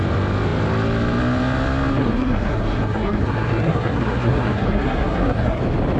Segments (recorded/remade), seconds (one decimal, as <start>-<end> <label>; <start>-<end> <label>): 0.0-2.0 recorded; 2.0-5.6 remade; 5.6-6.0 recorded